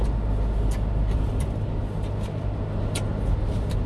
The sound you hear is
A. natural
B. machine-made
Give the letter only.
A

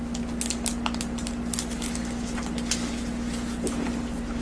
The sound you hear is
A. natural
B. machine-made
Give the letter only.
A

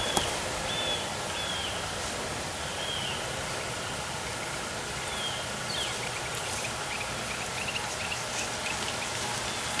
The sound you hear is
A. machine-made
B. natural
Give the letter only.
B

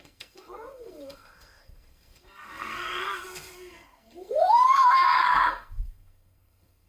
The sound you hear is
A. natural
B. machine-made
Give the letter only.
B